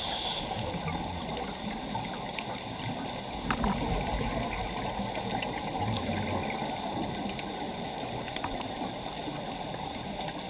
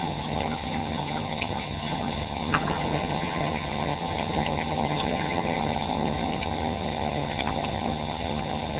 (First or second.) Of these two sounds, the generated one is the second